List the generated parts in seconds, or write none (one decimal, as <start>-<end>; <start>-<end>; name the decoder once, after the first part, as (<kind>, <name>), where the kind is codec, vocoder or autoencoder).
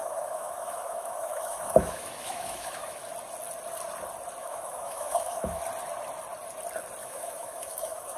0.0-3.0 (autoencoder, DAC-VAE); 4.4-5.6; 7.0-8.2